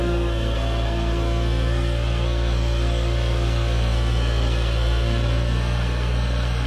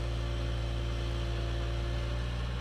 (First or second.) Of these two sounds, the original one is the second